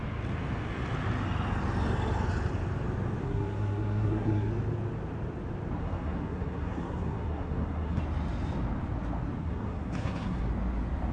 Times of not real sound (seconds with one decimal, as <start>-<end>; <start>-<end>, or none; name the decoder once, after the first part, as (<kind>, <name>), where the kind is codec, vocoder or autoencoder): 3.2-4.5 (codec, SNAC); 5.8-8.0; 9.4-10.5